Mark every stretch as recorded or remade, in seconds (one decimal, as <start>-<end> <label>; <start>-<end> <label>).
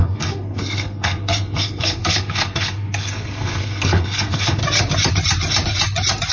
0.0-4.6 remade; 4.6-6.3 recorded